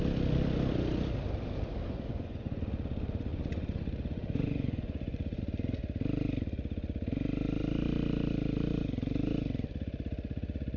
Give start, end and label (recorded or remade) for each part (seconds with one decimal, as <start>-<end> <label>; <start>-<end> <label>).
0.0-2.1 recorded; 2.1-2.6 remade; 2.6-3.3 recorded; 3.3-5.4 remade; 5.4-10.8 recorded